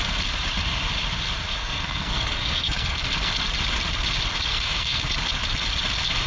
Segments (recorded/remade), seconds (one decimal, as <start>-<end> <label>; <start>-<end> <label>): 0.0-1.6 recorded; 1.6-3.3 remade; 3.3-4.5 recorded; 4.5-5.0 remade; 5.0-6.3 recorded